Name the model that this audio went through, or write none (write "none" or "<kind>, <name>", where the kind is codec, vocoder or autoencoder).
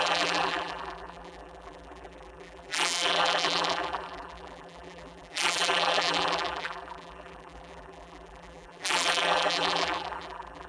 vocoder, BigVGAN v2